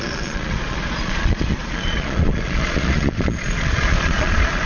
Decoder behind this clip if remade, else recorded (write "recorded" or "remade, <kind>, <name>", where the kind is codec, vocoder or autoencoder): remade, vocoder, Vocos